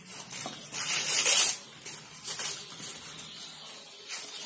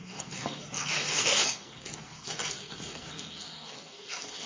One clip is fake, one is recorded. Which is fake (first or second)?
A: second